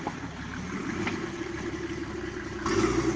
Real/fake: real